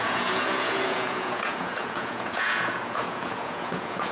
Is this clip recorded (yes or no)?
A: no